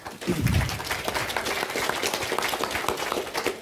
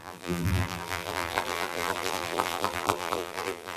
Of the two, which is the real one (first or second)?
first